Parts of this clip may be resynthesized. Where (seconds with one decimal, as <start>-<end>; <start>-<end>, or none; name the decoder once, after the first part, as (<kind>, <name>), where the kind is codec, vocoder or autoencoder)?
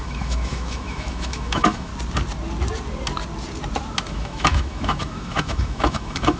0.0-1.9 (autoencoder, DAC-VAE); 4.1-6.4